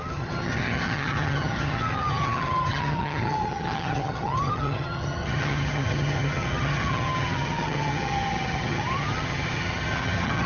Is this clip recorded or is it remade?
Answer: remade